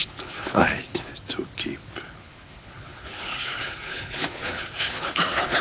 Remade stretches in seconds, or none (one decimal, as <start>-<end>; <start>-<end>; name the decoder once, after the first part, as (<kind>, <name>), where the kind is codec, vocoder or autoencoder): 0.0-1.1 (codec, HILCodec); 2.0-5.6